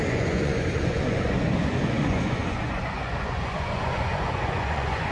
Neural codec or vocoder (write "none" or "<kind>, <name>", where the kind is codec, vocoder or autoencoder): vocoder, Vocos